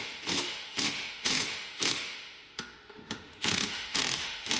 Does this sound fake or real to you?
fake